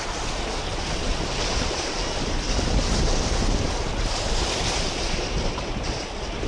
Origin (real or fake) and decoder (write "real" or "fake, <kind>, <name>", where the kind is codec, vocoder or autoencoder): real